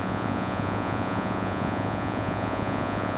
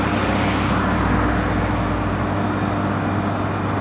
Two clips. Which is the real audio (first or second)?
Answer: second